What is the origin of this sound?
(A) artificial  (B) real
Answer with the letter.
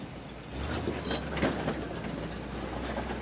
B